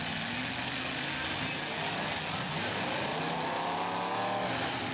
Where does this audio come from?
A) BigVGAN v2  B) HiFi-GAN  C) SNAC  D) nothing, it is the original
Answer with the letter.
D